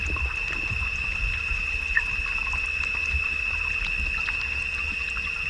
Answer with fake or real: real